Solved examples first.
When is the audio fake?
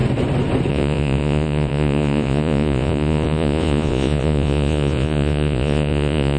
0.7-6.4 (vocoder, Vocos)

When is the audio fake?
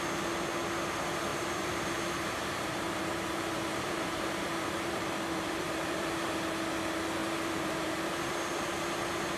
1.3-6.3 (vocoder, BigVGAN v2); 7.2-7.9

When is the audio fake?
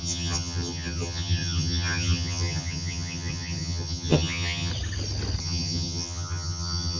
0.0-4.7 (vocoder, HiFi-GAN); 5.4-7.0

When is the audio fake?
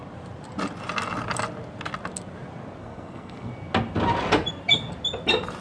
2.8-3.5 (codec, SNAC)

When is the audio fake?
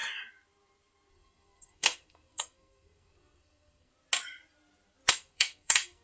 1.1-3.9 (codec, SNAC); 5.1-6.0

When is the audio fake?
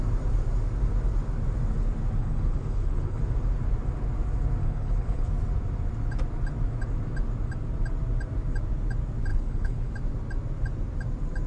2.2-3.2 (codec, HILCodec); 4.6-5.3; 9.3-9.9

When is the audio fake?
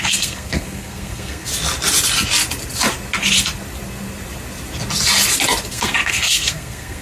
0.0-1.5 (codec, SNAC); 5.7-7.0